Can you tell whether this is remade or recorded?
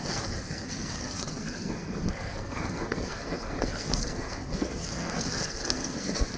remade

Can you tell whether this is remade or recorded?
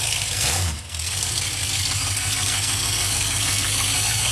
remade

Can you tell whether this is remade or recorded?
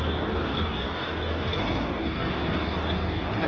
remade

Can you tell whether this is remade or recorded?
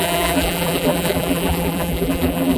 remade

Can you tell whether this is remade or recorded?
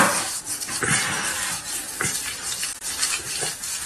remade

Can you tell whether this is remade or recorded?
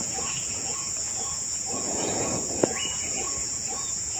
remade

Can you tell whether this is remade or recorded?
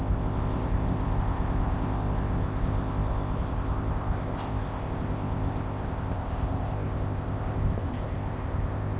remade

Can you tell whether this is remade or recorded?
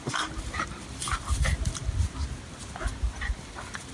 recorded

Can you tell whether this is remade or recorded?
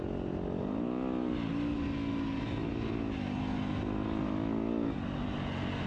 recorded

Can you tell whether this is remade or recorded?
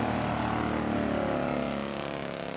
recorded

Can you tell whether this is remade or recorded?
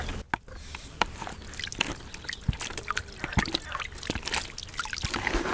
recorded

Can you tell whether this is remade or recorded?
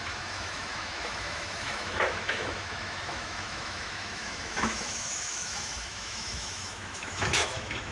remade